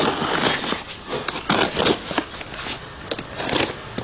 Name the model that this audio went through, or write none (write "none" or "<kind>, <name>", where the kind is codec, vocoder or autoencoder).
none